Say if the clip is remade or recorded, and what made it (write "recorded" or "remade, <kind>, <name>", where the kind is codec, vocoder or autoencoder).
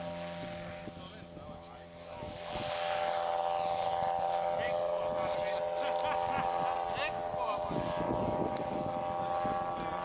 recorded